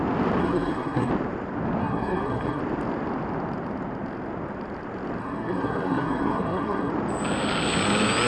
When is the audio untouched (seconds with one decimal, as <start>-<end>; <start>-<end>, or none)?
0.0-0.4; 1.1-1.8; 2.6-5.2; 6.9-8.3